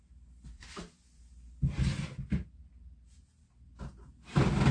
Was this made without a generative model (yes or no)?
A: yes